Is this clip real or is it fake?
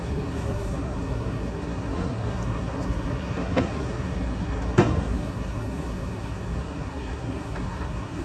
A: fake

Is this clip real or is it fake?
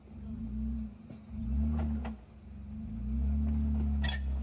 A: real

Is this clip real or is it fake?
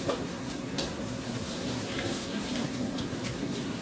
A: fake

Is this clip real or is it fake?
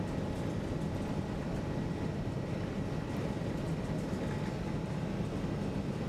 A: real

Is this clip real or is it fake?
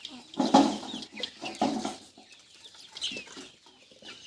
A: real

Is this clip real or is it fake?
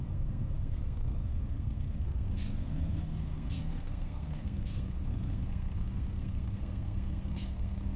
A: fake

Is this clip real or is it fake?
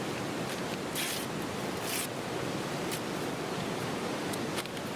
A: real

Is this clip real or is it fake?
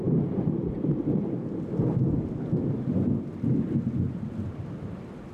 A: real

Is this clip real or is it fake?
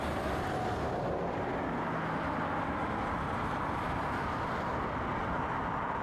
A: real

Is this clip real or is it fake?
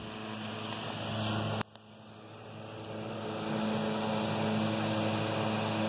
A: real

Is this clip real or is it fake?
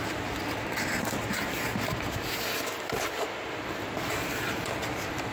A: real